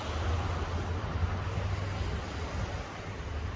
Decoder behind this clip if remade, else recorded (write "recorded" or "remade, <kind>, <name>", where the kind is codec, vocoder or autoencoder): recorded